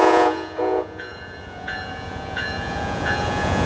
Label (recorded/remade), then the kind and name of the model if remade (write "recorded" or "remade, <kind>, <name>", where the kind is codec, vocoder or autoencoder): remade, vocoder, Vocos